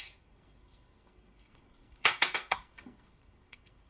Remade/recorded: remade